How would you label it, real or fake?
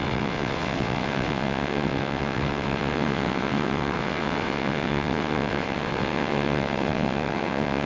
fake